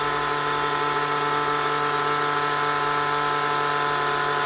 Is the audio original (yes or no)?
yes